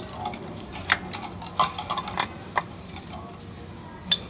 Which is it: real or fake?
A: real